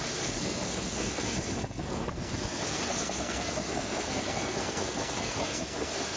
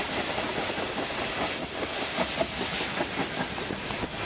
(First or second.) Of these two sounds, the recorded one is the second